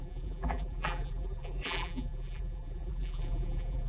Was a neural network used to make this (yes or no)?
yes